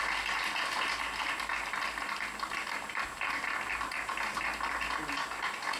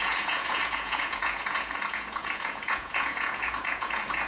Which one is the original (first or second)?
first